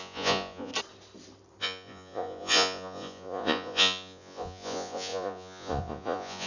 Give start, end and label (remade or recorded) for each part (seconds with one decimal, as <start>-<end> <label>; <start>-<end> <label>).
0.0-0.7 remade; 0.7-1.6 recorded; 1.6-6.5 remade